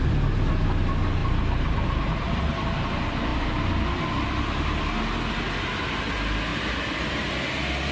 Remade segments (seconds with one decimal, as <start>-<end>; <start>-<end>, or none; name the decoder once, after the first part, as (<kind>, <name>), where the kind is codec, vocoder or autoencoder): 1.2-2.3 (vocoder, BigVGAN v2); 6.5-7.3